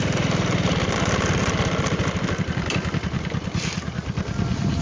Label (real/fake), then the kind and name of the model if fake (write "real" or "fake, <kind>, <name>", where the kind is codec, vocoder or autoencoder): real